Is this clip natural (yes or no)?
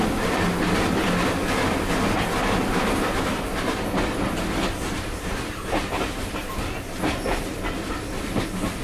yes